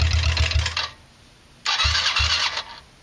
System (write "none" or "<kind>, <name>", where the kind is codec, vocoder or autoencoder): none